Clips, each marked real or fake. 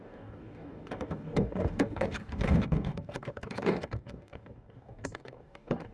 fake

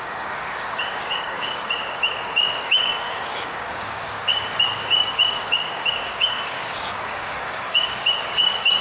fake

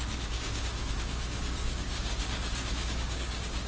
fake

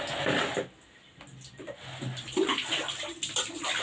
real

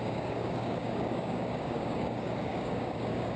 fake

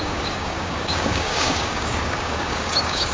fake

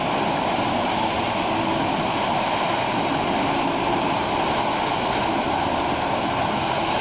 real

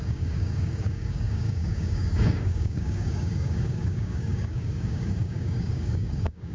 fake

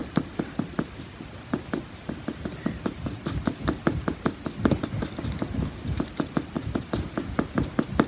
real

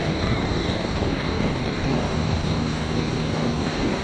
fake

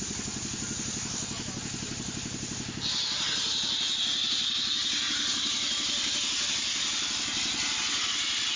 real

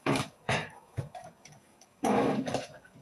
fake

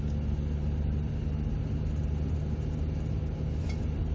real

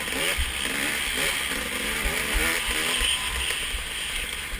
real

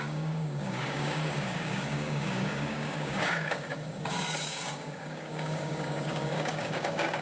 fake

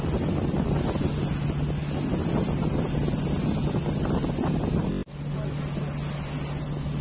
real